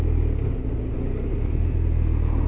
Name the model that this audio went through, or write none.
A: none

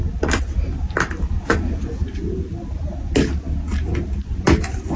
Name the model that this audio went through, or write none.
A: none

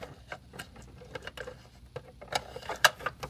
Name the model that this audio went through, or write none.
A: none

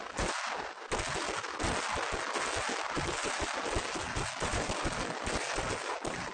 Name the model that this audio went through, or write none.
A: none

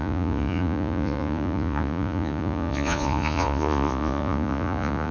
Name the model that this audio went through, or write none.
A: vocoder, Vocos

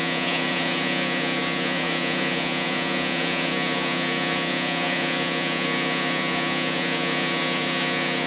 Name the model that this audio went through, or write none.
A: vocoder, Vocos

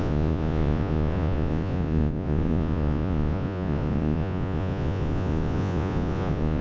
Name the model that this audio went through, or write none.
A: vocoder, Vocos